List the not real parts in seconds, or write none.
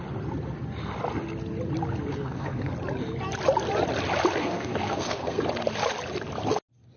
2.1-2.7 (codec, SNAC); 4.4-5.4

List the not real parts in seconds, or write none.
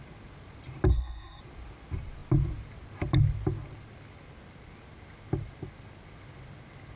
0.9-1.4 (codec, SNAC)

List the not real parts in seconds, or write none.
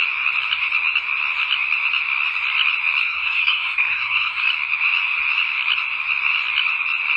3.0-4.5 (codec, SNAC)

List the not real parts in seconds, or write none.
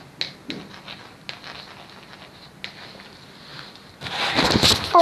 none